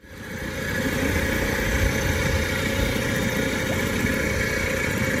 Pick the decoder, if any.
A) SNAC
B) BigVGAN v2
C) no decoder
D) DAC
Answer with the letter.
C